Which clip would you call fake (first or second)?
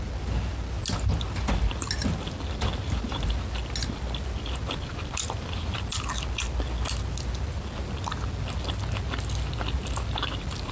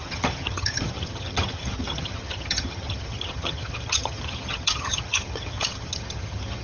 second